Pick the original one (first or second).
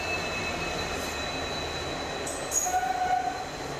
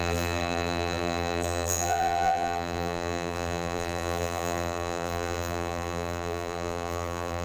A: first